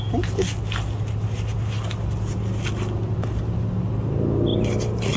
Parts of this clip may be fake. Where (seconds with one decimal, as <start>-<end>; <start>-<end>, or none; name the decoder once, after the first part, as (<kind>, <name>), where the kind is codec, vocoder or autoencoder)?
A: none